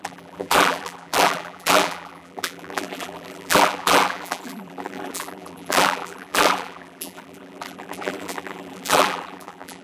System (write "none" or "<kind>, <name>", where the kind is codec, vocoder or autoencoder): vocoder, BigVGAN v2